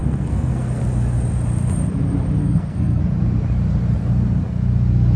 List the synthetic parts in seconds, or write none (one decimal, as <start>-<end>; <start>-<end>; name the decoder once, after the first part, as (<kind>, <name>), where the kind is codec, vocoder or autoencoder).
0.0-0.8 (codec, SNAC); 2.4-3.0